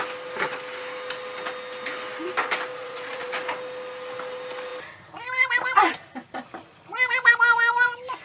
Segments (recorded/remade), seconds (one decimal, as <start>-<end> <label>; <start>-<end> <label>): 0.0-2.7 recorded; 2.7-3.3 remade; 3.3-8.2 recorded